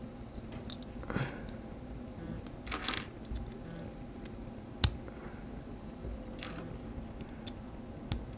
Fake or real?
real